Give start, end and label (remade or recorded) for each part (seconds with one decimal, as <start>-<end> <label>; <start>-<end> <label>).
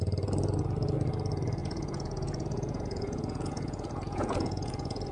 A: 0.0-1.6 recorded; 1.6-5.1 remade